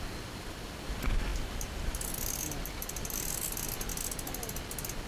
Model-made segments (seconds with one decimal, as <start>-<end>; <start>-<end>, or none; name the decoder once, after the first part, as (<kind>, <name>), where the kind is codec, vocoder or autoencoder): 1.3-2.1 (vocoder, BigVGAN v2)